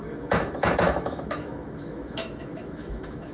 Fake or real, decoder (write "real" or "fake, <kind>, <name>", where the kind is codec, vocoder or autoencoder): fake, autoencoder, DAC-VAE